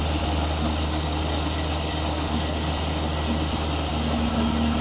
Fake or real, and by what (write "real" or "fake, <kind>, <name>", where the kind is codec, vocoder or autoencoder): real